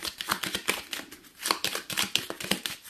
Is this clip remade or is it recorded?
remade